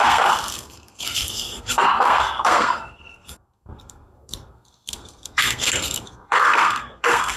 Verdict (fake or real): fake